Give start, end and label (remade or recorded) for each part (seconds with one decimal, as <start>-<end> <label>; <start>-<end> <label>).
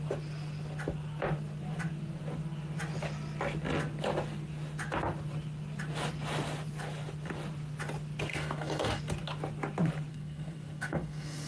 0.0-8.3 recorded; 8.3-9.0 remade; 9.0-10.1 recorded; 10.1-11.5 remade